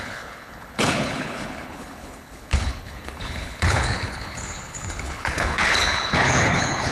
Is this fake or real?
fake